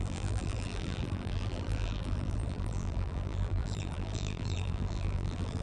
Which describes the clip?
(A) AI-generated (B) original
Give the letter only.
A